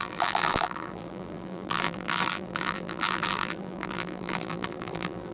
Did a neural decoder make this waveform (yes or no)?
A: yes